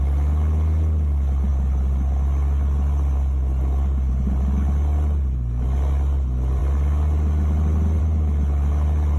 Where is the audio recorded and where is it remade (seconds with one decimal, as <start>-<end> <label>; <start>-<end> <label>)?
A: 0.0-9.2 recorded